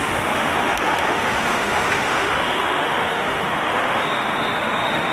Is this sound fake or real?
fake